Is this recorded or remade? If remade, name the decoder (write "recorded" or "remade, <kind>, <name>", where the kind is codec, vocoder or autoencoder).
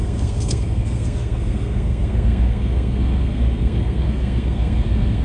remade, codec, SNAC